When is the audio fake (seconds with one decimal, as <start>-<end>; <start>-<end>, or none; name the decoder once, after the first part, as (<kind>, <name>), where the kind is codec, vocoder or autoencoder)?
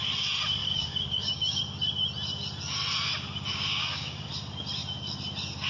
0.6-1.6 (codec, DAC); 3.5-4.3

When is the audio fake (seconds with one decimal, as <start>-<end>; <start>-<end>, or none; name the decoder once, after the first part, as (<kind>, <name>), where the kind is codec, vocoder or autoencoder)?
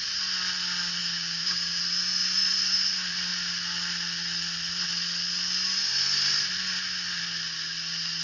1.0-1.8 (codec, DAC)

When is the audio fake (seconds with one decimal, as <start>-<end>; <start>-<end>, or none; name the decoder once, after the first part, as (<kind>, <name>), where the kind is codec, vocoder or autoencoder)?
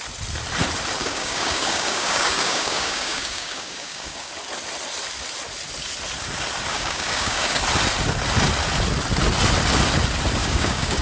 1.0-4.3 (codec, DAC); 6.7-7.6; 10.4-11.0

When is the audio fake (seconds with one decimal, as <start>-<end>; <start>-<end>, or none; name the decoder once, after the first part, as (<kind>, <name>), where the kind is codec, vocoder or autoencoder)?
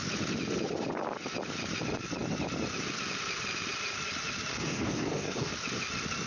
4.5-5.5 (codec, DAC)